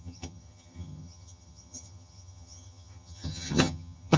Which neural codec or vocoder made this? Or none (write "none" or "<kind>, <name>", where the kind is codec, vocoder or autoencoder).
vocoder, HiFi-GAN